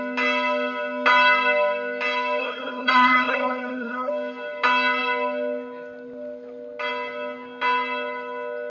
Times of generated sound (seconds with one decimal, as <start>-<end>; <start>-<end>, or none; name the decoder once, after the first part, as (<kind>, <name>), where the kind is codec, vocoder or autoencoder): 2.4-4.1 (codec, SNAC)